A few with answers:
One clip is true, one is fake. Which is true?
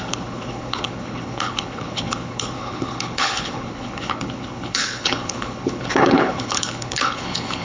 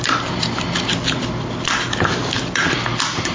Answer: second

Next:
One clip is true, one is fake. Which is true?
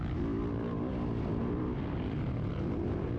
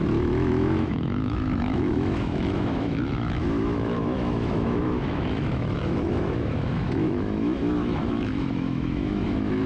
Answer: first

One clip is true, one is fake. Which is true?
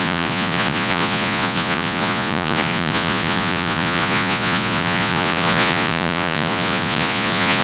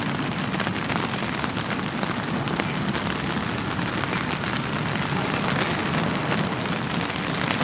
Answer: second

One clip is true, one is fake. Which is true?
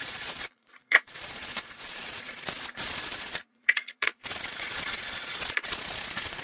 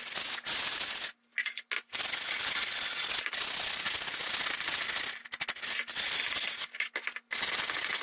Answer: second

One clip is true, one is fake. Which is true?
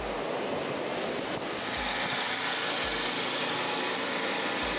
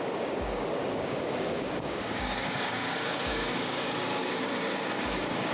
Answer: first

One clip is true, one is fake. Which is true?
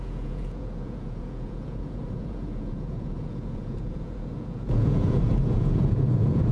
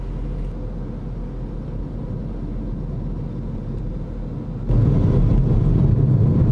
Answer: second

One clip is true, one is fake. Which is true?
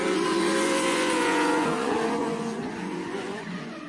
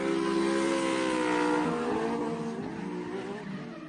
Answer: second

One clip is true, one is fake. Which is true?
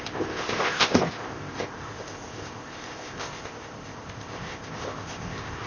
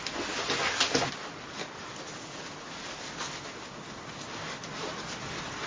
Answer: second